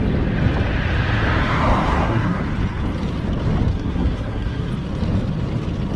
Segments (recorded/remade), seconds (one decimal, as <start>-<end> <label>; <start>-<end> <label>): 0.0-1.9 recorded; 1.9-2.4 remade; 2.4-3.7 recorded; 3.7-4.7 remade; 4.7-6.0 recorded